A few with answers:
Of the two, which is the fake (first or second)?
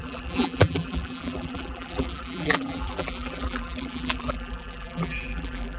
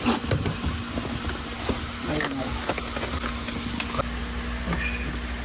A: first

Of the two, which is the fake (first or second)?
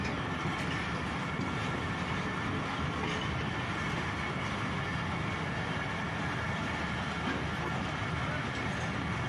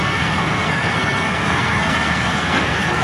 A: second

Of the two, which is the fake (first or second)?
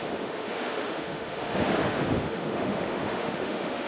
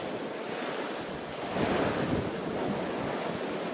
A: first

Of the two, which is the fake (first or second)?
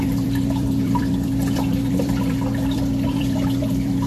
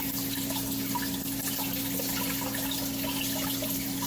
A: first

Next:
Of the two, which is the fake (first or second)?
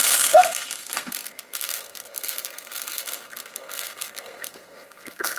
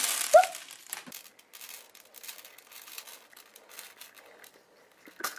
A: first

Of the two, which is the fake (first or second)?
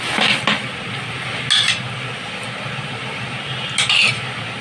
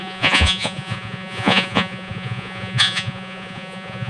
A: second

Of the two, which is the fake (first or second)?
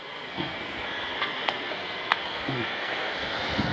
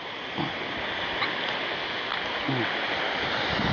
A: first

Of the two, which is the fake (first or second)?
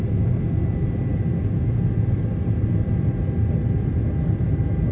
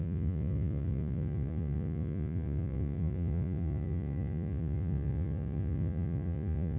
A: second